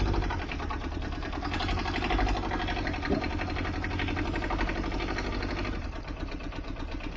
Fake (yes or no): no